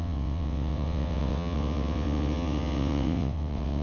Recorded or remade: remade